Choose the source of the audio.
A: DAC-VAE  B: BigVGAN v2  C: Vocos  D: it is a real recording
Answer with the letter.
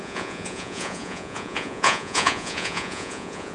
C